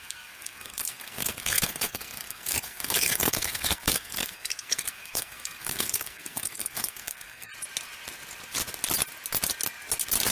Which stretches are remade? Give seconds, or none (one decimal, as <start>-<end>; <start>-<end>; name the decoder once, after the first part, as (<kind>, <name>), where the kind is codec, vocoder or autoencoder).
0.0-7.5 (codec, SNAC)